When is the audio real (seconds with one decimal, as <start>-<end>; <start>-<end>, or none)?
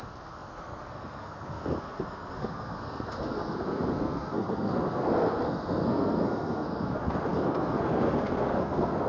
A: none